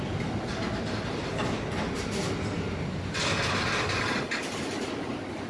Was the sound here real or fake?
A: real